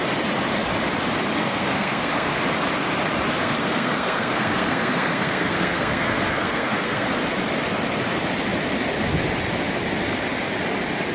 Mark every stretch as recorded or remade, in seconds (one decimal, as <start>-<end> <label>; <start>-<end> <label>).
0.0-1.4 recorded; 1.4-2.4 remade; 2.4-3.4 recorded; 3.4-7.1 remade; 7.1-11.1 recorded